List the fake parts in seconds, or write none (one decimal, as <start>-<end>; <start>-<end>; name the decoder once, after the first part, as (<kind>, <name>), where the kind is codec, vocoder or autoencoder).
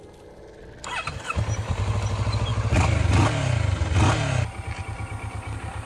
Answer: none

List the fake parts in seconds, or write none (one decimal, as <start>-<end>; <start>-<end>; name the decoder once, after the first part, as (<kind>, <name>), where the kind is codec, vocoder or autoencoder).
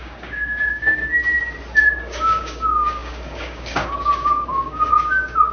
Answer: 0.0-1.0 (codec, DAC); 2.0-5.5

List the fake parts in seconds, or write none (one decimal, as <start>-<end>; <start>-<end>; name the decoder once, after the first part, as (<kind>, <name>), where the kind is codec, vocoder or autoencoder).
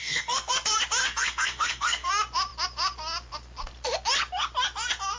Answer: 0.0-0.5 (codec, SNAC); 1.0-2.1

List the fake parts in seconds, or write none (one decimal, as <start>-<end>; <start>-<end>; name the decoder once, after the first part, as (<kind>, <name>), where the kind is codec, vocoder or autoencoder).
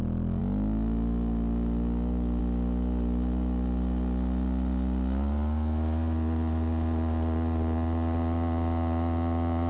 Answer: none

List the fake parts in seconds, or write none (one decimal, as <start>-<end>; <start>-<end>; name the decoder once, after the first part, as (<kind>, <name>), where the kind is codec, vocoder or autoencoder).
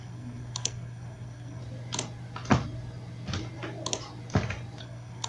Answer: 0.0-1.6 (codec, SNAC); 4.8-5.3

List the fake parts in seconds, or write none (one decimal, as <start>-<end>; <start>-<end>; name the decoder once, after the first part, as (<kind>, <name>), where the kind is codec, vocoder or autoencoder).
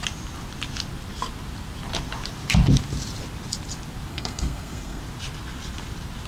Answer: 4.1-5.0 (codec, SNAC)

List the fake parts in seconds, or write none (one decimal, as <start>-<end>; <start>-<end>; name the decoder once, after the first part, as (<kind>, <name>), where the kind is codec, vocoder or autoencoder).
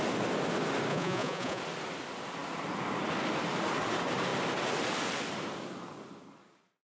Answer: 0.9-1.6 (vocoder, Vocos)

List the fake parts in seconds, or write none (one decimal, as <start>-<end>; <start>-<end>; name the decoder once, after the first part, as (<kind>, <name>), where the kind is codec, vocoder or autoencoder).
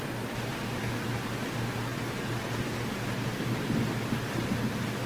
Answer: none